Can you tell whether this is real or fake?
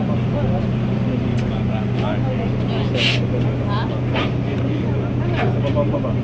real